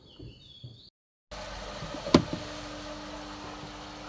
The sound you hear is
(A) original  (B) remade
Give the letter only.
A